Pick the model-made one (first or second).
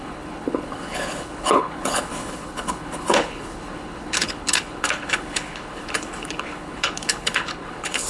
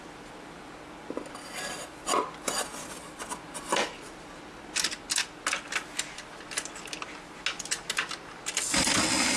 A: first